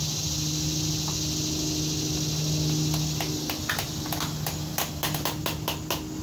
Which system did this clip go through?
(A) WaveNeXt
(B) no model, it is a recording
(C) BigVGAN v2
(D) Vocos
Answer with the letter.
B